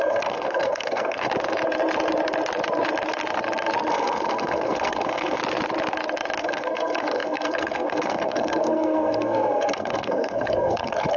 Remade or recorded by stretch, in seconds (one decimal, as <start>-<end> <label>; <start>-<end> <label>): 0.0-1.3 remade; 1.3-3.9 recorded; 3.9-5.4 remade; 5.4-6.4 recorded; 6.4-11.2 remade